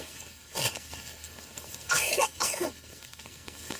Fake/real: fake